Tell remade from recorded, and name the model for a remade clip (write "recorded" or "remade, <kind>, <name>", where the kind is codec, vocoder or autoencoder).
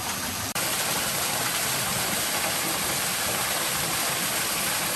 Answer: remade, vocoder, BigVGAN v2